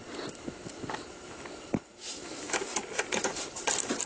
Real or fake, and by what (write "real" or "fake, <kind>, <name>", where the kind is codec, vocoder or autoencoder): real